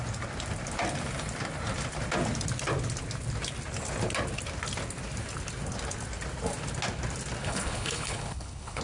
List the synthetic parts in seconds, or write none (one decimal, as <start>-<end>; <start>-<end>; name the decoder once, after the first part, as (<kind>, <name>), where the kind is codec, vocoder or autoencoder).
7.4-8.8 (codec, HILCodec)